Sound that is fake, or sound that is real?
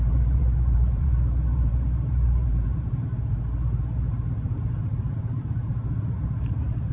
fake